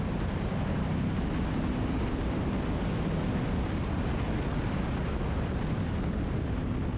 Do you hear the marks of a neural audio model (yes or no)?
no